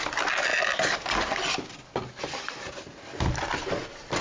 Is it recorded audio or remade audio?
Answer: recorded